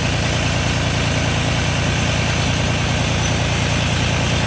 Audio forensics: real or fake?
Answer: real